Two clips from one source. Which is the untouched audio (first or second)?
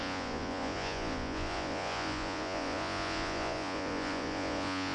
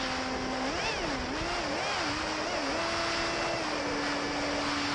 second